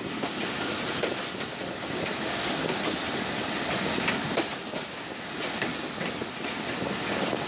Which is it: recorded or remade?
recorded